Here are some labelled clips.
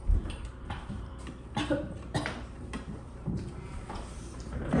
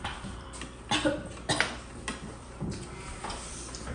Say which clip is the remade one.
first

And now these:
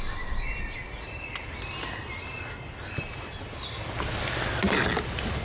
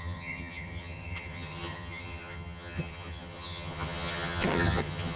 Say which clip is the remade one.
second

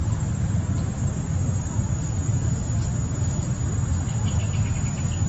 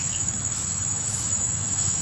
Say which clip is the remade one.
second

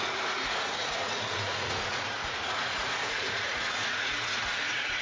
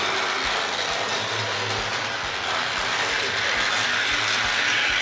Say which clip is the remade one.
first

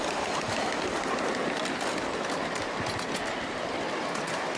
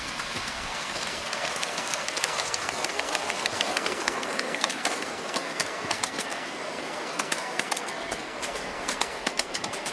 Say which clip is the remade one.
second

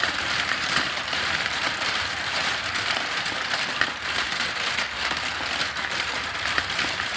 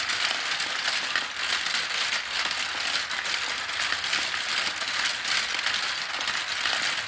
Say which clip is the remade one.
first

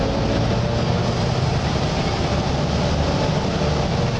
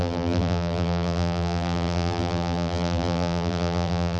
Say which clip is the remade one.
second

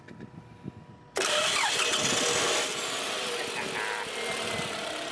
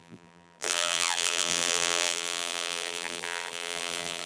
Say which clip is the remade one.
second